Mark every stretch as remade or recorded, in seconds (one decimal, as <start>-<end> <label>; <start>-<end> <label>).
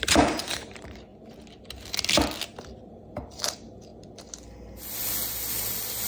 0.0-1.1 remade; 1.1-2.8 recorded; 2.8-3.9 remade; 3.9-6.1 recorded